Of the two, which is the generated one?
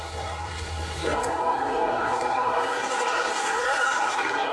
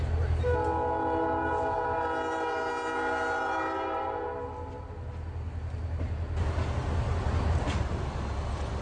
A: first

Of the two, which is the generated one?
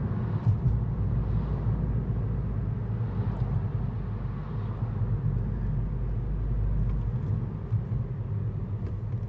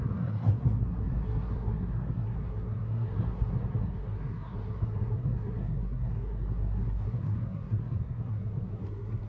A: second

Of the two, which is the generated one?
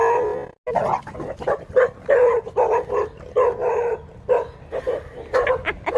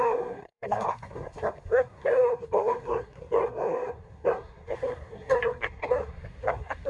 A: second